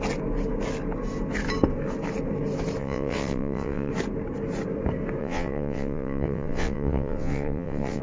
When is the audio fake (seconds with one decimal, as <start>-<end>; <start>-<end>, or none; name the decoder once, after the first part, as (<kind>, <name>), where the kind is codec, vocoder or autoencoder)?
2.8-3.9 (vocoder, WaveNeXt); 5.2-8.0